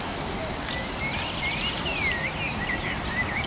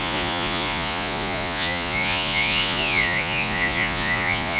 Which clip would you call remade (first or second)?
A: second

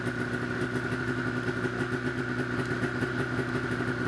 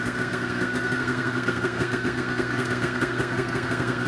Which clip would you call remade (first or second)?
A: second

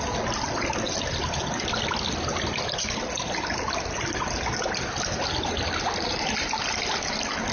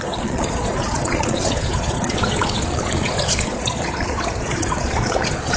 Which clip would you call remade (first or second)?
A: second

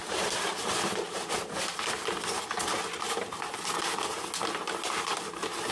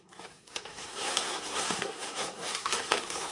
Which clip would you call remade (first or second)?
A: second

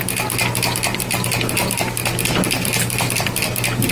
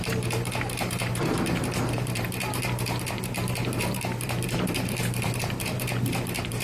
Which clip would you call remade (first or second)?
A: second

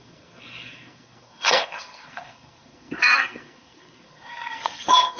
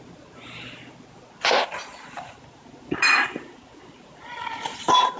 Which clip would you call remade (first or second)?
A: first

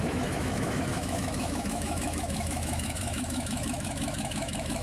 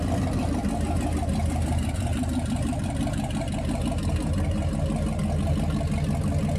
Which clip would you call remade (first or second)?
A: first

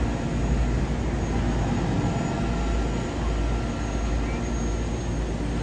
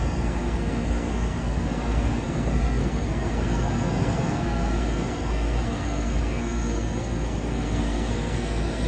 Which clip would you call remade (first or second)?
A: second